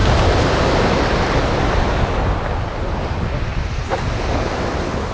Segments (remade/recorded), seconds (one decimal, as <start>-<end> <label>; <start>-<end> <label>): 0.0-5.1 recorded

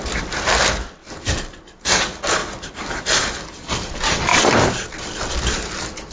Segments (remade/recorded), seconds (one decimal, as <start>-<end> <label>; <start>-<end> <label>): 0.0-1.0 recorded; 1.0-2.0 remade; 2.0-2.4 recorded; 2.4-3.9 remade; 3.9-4.3 recorded; 4.3-4.8 remade; 4.8-6.1 recorded

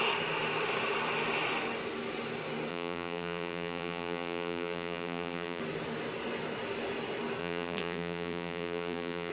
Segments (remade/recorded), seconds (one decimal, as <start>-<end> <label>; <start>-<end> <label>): 0.0-2.7 recorded; 2.7-5.6 remade; 5.6-7.4 recorded; 7.4-9.3 remade

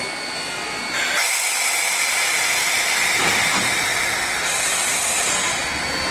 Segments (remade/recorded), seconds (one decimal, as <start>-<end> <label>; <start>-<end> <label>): 0.0-3.9 recorded; 3.9-4.7 remade; 4.7-6.1 recorded